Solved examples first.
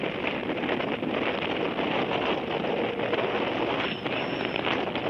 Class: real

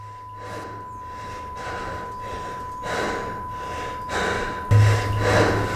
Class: real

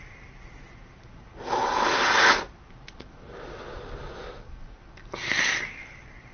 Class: real